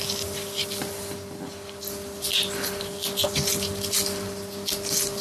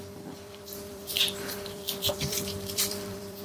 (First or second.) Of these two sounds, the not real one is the second